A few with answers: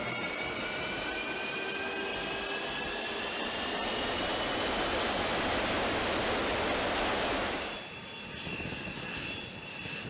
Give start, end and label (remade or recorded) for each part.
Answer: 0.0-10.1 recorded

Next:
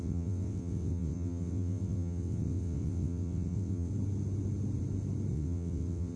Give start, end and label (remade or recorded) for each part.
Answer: 0.0-3.9 remade; 3.9-5.3 recorded; 5.3-6.2 remade

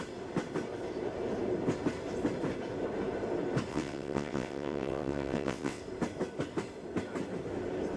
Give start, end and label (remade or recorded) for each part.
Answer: 0.0-3.7 recorded; 3.7-5.8 remade; 5.8-8.0 recorded

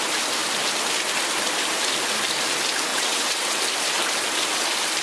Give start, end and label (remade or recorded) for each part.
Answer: 0.0-2.9 recorded; 2.9-3.6 remade; 3.6-5.0 recorded

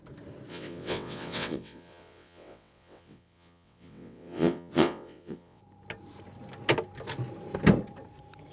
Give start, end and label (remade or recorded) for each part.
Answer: 0.0-0.5 recorded; 0.5-5.6 remade; 5.6-8.5 recorded